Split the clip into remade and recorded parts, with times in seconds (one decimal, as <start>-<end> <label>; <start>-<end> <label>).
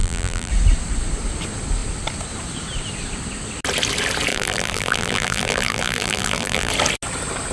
0.0-0.5 remade; 0.5-4.3 recorded; 4.3-6.7 remade; 6.7-7.5 recorded